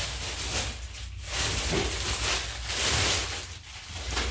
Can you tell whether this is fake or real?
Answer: real